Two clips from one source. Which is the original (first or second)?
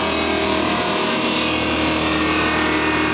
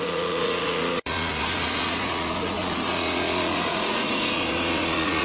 first